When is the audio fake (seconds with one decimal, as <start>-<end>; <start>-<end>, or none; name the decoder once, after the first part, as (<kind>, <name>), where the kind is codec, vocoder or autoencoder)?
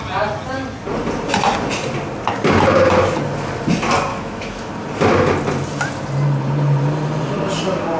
4.1-4.7 (autoencoder, DAC-VAE)